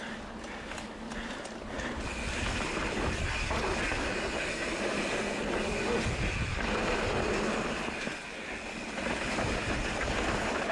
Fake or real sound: real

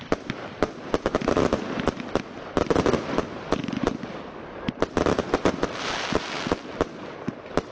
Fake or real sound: real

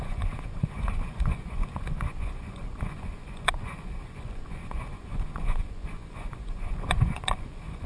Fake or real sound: fake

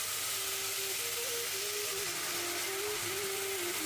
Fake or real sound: real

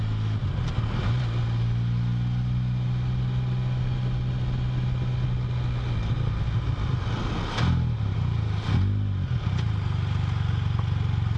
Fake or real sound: real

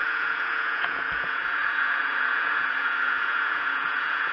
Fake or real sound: fake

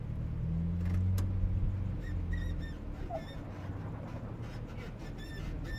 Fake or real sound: real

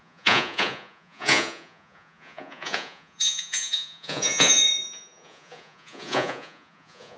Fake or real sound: fake